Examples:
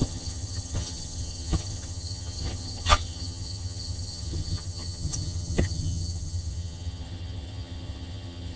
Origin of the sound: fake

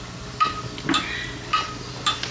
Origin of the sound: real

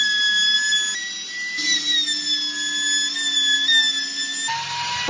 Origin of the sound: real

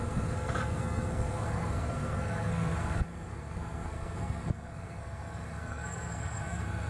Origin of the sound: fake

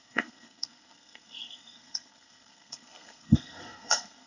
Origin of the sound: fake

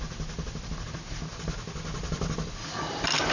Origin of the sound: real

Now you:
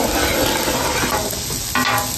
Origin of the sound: real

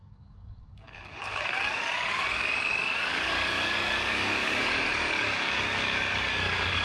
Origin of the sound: fake